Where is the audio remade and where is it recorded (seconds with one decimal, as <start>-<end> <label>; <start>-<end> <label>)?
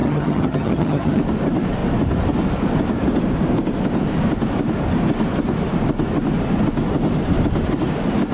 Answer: 0.0-1.2 remade; 1.2-8.3 recorded